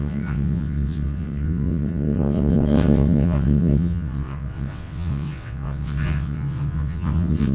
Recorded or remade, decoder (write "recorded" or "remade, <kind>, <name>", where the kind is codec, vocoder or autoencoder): remade, vocoder, WaveNeXt